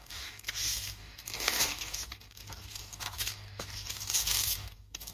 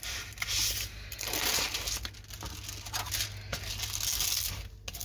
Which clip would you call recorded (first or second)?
second